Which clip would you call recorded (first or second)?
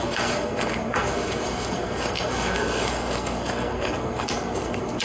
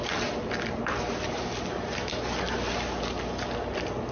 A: second